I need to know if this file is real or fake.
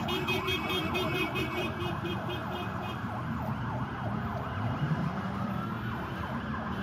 fake